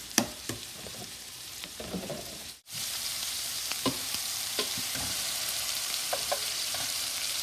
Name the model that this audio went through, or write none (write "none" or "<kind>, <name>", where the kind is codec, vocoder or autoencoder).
vocoder, BigVGAN v2